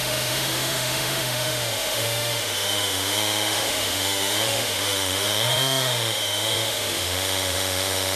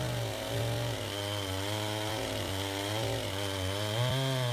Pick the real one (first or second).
second